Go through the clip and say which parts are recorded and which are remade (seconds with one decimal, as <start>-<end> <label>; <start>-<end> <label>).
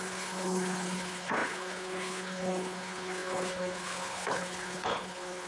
0.0-5.5 remade